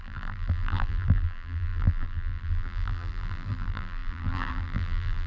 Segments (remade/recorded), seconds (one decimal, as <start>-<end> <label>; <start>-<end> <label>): 0.0-5.3 remade